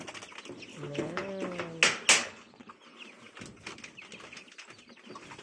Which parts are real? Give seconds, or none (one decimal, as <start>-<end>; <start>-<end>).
0.0-0.7; 1.3-2.2; 2.7-5.4